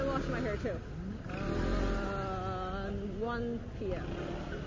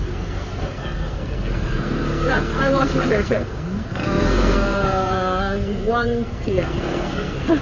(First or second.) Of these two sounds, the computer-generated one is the second